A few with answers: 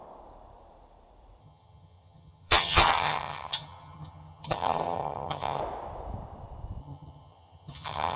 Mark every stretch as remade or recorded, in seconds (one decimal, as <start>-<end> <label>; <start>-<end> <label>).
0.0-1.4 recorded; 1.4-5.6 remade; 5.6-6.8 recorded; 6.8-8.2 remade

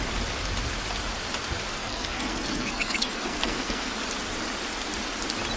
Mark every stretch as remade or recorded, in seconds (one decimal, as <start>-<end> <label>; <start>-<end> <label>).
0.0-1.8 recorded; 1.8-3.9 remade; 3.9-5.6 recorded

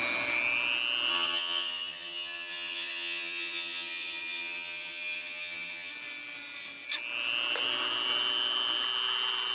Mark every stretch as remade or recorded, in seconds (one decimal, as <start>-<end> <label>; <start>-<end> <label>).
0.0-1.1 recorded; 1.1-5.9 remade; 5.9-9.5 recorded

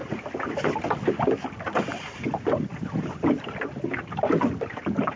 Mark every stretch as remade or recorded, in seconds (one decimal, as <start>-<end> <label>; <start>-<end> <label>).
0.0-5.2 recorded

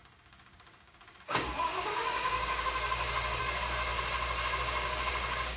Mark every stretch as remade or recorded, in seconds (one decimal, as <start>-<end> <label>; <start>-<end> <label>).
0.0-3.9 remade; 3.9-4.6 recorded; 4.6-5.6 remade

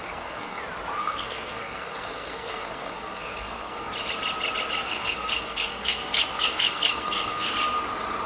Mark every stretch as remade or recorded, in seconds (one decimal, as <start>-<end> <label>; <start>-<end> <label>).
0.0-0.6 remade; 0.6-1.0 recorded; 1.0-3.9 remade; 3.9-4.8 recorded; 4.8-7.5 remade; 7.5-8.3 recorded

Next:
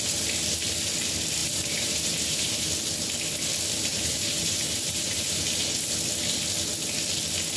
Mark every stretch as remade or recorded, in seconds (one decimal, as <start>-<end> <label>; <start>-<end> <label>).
0.0-1.4 recorded; 1.4-2.7 remade; 2.7-3.9 recorded; 3.9-5.7 remade; 5.7-7.6 recorded